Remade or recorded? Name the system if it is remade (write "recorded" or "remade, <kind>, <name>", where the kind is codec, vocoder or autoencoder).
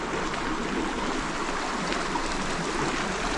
recorded